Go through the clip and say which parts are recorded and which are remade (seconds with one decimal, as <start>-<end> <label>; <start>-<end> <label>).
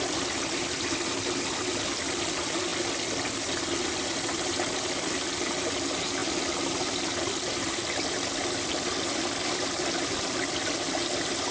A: 0.0-11.5 recorded